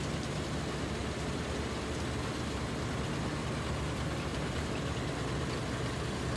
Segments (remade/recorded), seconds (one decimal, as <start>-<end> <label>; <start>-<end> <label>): 0.0-1.0 recorded; 1.0-1.6 remade; 1.6-4.3 recorded; 4.3-4.8 remade; 4.8-6.4 recorded